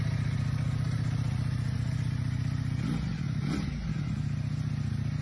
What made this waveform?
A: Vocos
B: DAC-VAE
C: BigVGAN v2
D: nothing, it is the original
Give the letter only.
D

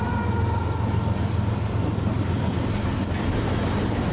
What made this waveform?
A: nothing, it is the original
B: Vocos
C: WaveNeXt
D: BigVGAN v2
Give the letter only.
A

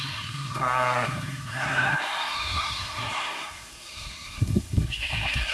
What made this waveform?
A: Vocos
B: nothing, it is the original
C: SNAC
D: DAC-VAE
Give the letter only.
C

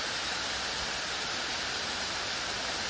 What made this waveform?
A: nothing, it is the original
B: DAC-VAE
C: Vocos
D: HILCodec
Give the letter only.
A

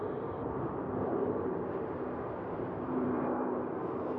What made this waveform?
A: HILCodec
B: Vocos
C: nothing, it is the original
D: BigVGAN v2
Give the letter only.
D